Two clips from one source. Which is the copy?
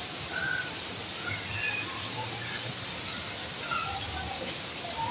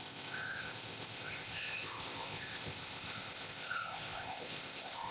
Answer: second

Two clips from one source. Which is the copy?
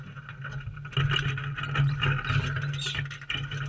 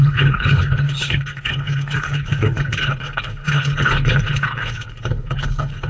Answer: second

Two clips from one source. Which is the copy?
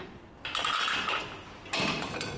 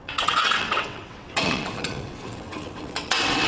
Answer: second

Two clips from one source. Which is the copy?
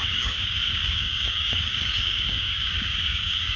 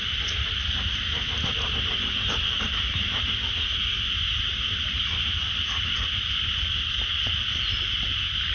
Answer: first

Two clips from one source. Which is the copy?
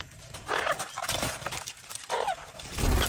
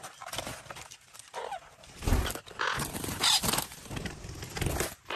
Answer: first